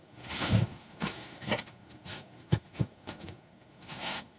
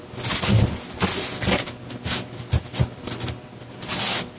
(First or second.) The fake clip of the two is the first